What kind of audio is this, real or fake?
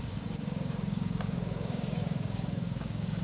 fake